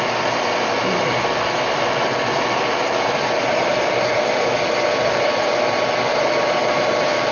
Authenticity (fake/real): real